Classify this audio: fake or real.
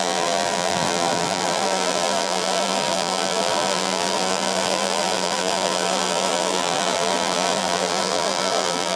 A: fake